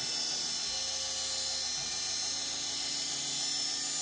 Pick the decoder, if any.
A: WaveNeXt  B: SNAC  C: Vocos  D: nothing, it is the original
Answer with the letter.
D